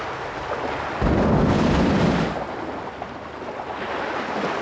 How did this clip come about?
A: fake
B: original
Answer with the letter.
B